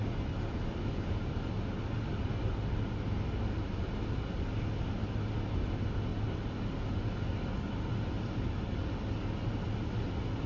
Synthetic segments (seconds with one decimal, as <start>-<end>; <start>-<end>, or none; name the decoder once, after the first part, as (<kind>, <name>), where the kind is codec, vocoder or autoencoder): none